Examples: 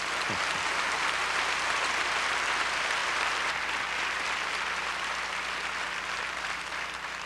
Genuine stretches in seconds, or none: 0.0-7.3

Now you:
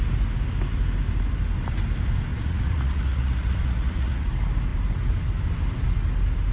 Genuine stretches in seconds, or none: 0.0-2.3; 4.3-6.5